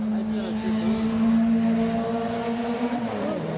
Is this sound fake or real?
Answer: real